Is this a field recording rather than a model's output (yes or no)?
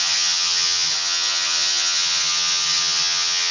no